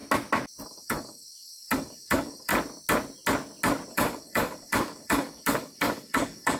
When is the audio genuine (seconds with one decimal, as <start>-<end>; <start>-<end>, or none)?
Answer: 0.0-0.6; 2.5-3.9